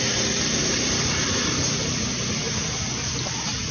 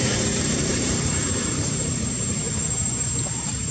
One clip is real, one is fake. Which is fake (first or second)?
second